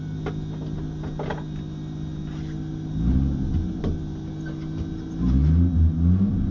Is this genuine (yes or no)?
yes